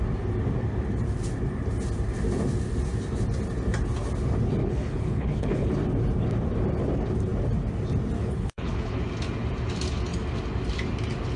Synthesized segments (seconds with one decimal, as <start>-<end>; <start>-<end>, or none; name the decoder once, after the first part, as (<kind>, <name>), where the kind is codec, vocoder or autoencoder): 4.6-5.7 (codec, HILCodec); 8.2-9.0